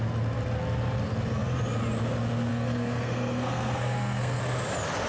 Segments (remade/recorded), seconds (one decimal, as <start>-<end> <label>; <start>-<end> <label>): 0.0-2.5 recorded; 2.5-4.4 remade; 4.4-5.1 recorded